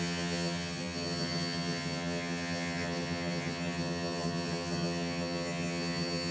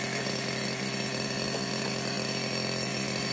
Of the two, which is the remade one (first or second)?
first